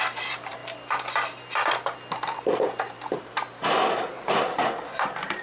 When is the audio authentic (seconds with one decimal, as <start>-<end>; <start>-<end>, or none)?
0.6-2.8